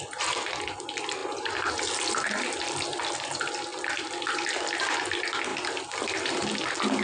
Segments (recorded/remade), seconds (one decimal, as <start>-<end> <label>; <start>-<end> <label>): 0.0-7.0 recorded